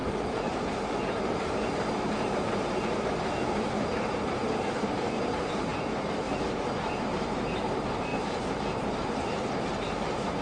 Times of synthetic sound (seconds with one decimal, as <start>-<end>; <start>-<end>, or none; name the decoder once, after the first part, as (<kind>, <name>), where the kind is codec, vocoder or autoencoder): 0.0-5.7 (vocoder, BigVGAN v2); 6.4-10.4